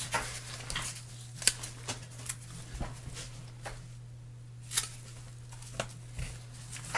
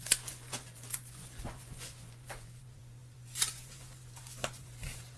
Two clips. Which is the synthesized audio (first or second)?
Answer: second